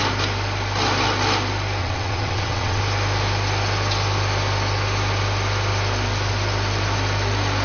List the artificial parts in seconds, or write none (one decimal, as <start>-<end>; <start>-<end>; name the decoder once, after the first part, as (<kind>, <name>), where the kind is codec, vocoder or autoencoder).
1.8-2.8 (vocoder, WaveNeXt)